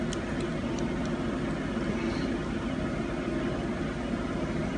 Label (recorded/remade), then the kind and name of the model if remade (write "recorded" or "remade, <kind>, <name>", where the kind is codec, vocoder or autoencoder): recorded